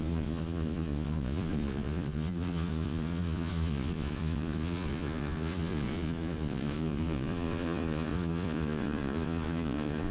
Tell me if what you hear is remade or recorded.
remade